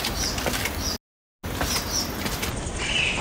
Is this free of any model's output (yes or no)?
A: yes